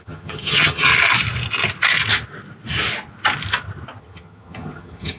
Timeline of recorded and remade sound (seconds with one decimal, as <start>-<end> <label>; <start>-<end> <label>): 0.0-0.9 remade; 0.9-4.0 recorded; 4.0-5.2 remade